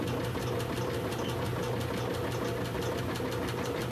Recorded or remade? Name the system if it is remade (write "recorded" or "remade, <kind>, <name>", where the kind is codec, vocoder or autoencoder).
recorded